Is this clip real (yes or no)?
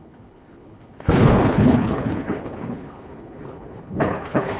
no